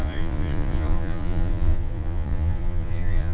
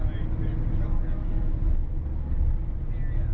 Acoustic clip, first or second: second